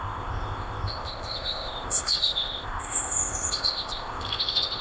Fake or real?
fake